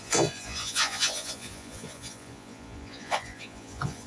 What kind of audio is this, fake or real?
fake